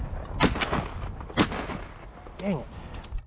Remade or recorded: recorded